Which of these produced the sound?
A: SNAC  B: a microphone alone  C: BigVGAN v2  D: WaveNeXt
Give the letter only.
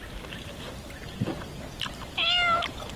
B